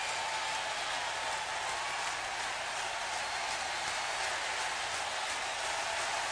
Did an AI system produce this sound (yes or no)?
no